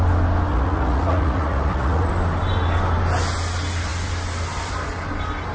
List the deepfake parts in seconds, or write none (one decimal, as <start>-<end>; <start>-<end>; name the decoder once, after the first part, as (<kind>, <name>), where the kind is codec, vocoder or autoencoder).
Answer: 0.5-2.1 (vocoder, Vocos)